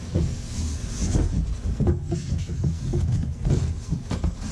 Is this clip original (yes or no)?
no